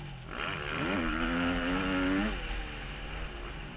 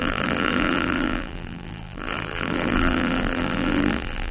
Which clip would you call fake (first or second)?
second